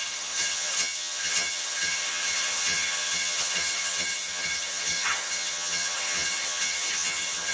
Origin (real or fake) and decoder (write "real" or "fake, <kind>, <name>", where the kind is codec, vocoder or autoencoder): fake, vocoder, HiFi-GAN